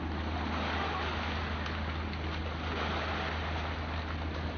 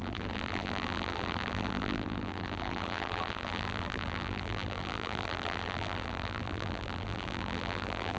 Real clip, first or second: first